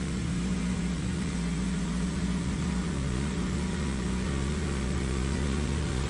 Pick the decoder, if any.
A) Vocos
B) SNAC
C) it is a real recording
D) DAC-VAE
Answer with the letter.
A